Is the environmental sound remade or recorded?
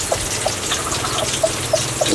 recorded